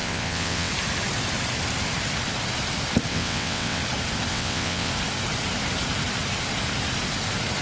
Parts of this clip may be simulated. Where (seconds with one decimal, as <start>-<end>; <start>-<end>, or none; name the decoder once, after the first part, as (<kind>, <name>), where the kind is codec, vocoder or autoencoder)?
0.0-0.7 (vocoder, WaveNeXt); 3.1-3.8; 4.3-4.9